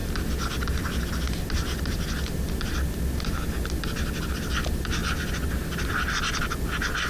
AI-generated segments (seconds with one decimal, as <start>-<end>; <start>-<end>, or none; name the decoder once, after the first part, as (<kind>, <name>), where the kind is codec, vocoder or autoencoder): none